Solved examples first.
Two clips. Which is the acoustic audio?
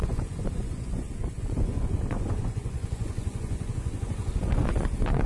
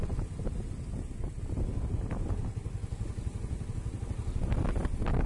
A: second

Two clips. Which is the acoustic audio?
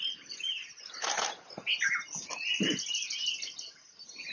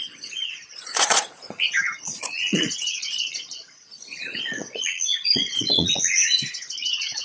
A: first